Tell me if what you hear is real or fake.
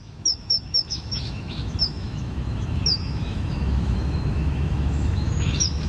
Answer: fake